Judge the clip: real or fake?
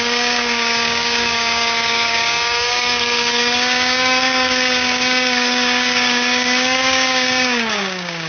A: fake